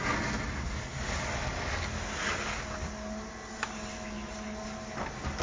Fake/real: real